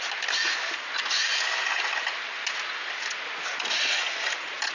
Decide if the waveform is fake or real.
real